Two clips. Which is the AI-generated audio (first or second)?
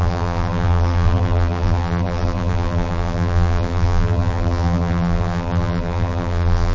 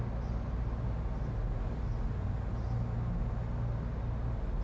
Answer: first